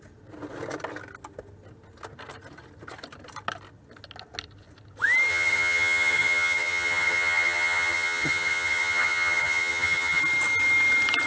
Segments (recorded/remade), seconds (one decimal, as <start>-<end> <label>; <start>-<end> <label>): 0.0-5.3 recorded; 5.3-10.2 remade; 10.2-11.3 recorded